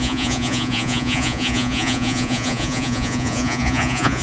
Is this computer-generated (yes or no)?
yes